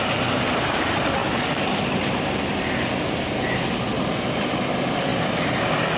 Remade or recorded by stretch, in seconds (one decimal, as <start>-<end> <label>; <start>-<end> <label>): 0.0-6.0 recorded